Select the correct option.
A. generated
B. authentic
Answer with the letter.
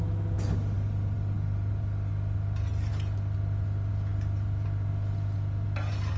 B